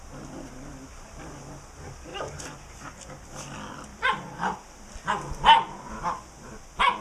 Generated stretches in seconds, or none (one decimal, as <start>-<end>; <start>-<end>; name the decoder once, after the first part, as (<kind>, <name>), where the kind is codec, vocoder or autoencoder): none